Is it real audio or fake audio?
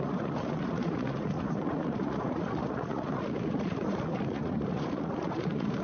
fake